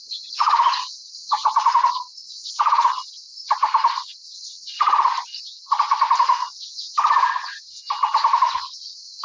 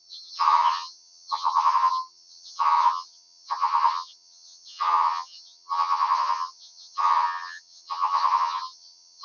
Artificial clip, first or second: second